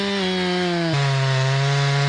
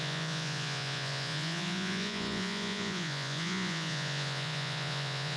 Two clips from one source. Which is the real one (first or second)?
first